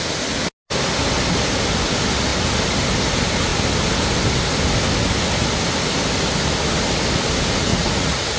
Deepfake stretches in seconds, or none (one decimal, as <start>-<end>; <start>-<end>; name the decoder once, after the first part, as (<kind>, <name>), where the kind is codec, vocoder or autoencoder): 7.7-8.4 (vocoder, Vocos)

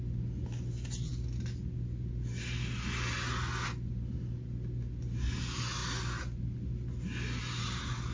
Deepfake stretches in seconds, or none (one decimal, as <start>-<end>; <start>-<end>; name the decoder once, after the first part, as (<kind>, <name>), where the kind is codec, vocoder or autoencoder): none

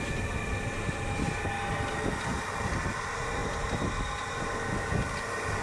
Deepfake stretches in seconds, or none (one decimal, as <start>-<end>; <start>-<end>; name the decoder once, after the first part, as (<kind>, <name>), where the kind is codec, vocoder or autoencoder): none

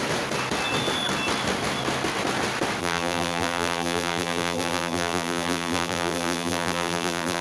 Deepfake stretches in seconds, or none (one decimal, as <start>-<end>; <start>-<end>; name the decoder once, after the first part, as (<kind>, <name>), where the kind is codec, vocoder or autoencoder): 2.8-7.4 (vocoder, BigVGAN v2)

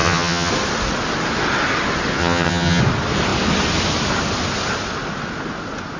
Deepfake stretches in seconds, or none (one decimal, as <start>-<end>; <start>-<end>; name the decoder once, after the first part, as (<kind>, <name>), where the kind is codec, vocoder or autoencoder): 0.0-0.5 (vocoder, HiFi-GAN); 2.2-2.8

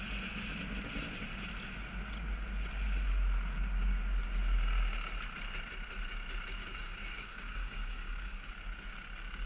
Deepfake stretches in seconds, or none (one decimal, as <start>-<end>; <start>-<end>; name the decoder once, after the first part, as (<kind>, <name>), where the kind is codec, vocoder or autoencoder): 6.6-8.5 (codec, DAC)